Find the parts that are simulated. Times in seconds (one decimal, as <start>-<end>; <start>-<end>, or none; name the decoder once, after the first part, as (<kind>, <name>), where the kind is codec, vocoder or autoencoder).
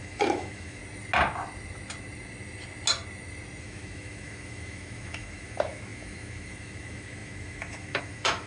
0.0-0.8 (autoencoder, DAC-VAE); 3.6-8.5